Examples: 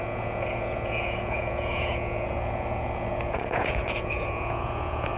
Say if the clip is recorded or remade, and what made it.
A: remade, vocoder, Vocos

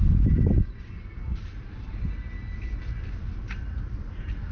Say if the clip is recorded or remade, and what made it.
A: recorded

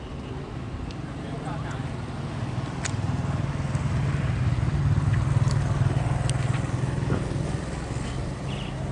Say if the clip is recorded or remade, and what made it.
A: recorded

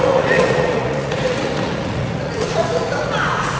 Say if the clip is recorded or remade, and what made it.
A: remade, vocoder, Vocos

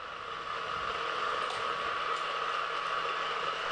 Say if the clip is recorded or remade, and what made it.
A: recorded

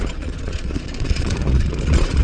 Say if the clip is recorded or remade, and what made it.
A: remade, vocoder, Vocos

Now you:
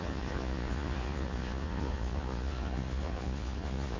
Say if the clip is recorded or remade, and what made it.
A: remade, vocoder, Vocos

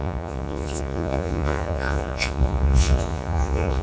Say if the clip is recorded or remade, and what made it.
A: remade, vocoder, Vocos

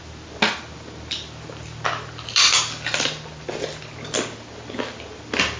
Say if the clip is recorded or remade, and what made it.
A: recorded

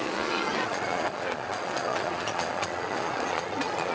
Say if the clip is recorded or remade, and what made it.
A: remade, vocoder, Vocos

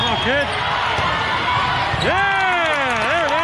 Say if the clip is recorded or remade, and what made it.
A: recorded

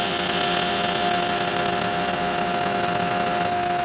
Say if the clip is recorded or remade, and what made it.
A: recorded